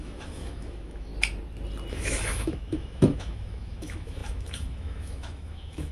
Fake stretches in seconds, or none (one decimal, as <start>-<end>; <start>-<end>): 0.0-1.1; 1.9-5.9